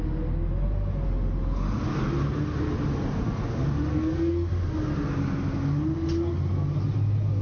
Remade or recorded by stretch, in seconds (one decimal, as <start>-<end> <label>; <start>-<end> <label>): 0.0-3.9 recorded; 3.9-4.5 remade; 4.5-7.4 recorded